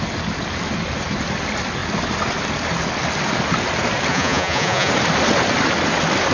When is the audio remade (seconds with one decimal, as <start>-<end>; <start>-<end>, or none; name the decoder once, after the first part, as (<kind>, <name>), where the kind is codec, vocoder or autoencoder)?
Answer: 4.1-4.9 (vocoder, Vocos)